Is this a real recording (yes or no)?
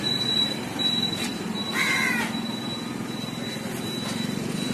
yes